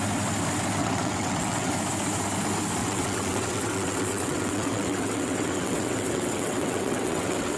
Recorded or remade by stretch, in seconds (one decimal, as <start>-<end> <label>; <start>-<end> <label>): 0.0-0.8 recorded; 0.8-1.7 remade; 1.7-2.8 recorded; 2.8-7.6 remade